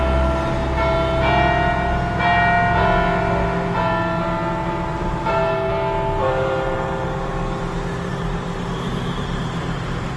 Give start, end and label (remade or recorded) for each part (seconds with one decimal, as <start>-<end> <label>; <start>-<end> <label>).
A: 0.0-4.9 recorded; 4.9-5.7 remade; 5.7-6.2 recorded; 6.2-7.3 remade; 7.3-8.1 recorded; 8.1-10.2 remade

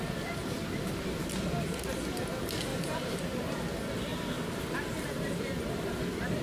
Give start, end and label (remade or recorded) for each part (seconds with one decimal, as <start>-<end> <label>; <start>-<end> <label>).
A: 0.0-2.7 recorded; 2.7-3.5 remade; 3.5-4.1 recorded; 4.1-4.6 remade; 4.6-6.4 recorded

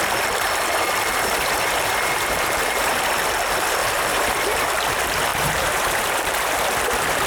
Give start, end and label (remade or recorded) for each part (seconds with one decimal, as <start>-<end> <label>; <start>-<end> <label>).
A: 0.0-1.1 recorded; 1.1-2.9 remade; 2.9-3.8 recorded; 3.8-4.6 remade; 4.6-5.3 recorded; 5.3-6.7 remade; 6.7-7.3 recorded

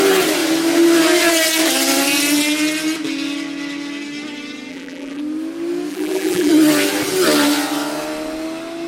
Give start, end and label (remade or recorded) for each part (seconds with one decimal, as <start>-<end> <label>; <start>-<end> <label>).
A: 0.0-4.7 recorded; 4.7-5.2 remade; 5.2-5.9 recorded; 5.9-6.5 remade; 6.5-8.9 recorded

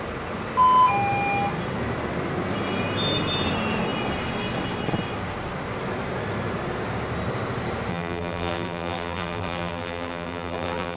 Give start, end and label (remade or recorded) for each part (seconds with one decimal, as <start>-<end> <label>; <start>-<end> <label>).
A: 0.0-7.9 recorded; 7.9-11.0 remade

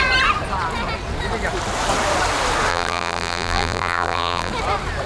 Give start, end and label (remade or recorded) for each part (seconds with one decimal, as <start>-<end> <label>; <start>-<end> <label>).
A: 0.0-2.7 recorded; 2.7-4.5 remade; 4.5-5.1 recorded

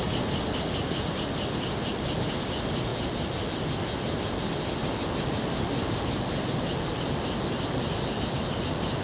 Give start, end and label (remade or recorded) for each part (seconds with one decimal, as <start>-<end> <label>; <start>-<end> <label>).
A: 0.0-9.0 recorded